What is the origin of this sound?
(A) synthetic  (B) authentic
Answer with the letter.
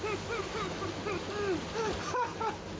B